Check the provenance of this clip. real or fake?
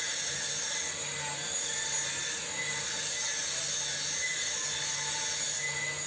real